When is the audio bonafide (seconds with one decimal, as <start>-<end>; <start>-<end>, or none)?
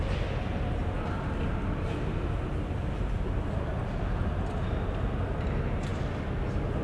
0.0-6.8